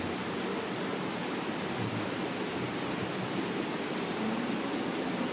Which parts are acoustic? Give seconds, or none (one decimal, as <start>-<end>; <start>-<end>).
0.0-0.9; 4.1-5.3

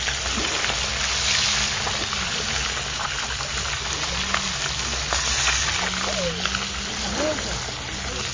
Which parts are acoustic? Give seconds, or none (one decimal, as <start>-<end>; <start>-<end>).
0.0-8.3

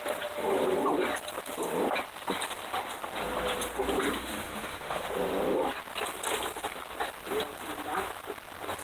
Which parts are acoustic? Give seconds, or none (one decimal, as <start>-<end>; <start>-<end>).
0.0-4.2; 5.1-8.8

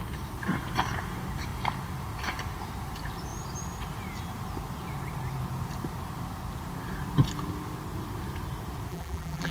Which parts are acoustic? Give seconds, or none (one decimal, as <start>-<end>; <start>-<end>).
0.0-8.9

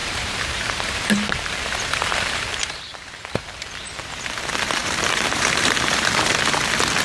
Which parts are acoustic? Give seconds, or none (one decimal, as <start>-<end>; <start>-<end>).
3.7-4.8; 6.6-7.0

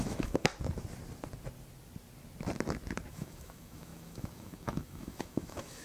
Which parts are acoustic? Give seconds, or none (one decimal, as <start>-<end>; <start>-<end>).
0.5-3.1

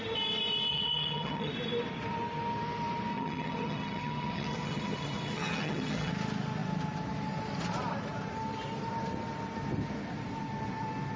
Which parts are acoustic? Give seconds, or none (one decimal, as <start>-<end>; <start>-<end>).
0.0-0.7; 1.5-3.1; 6.1-11.2